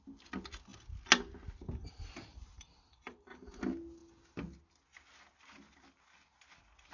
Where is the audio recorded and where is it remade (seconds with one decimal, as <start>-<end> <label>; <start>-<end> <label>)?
0.0-1.8 recorded; 1.8-3.6 remade; 3.6-6.9 recorded